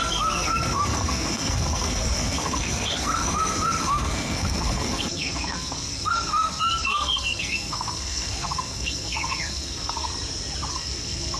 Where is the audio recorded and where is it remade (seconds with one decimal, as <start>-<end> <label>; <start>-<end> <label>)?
0.0-10.1 remade; 10.1-10.7 recorded; 10.7-11.4 remade